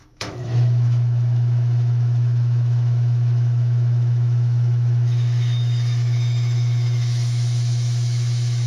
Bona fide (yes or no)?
no